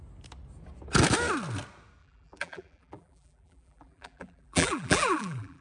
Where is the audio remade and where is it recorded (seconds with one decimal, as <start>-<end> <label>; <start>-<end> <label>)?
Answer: 0.0-2.0 recorded; 2.0-5.6 remade